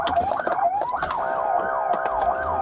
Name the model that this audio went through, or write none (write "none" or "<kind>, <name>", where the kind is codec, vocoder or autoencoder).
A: none